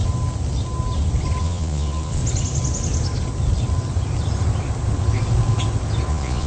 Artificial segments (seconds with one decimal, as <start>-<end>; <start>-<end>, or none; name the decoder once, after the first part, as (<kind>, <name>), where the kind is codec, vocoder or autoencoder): 1.4-2.2 (vocoder, Vocos); 6.1-6.5